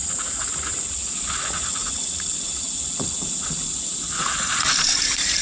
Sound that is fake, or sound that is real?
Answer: fake